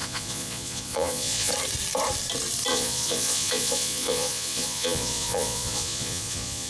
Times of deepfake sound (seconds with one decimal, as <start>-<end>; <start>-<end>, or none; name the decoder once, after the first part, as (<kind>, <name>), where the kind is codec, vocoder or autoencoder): 0.0-1.5 (vocoder, Vocos); 2.7-6.7